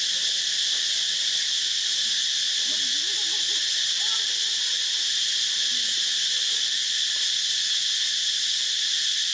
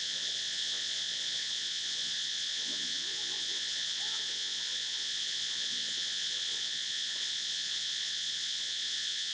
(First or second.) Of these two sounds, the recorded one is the first